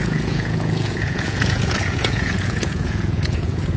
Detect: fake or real fake